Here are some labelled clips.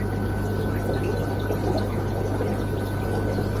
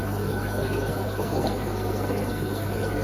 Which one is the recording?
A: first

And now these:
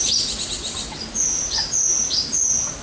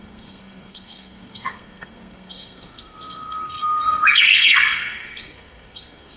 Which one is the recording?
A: first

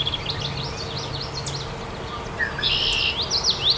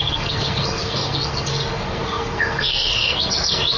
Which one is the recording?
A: first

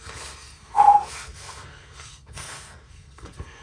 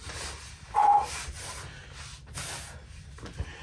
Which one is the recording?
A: second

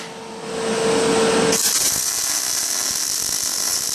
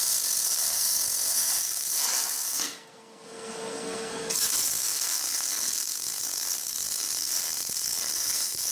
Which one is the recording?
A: first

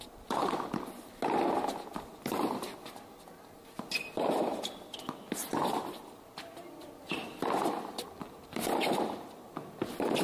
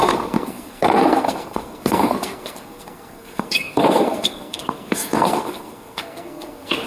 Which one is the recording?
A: first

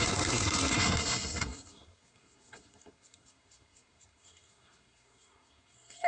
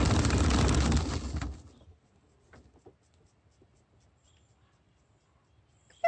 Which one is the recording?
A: second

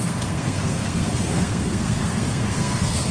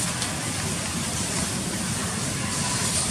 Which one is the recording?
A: second